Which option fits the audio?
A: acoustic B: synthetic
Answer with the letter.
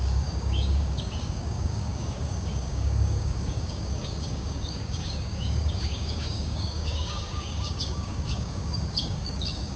B